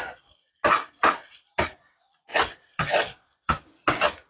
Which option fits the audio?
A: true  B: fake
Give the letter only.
A